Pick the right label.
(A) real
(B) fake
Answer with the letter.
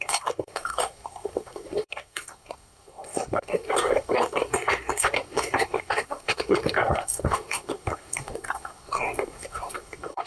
B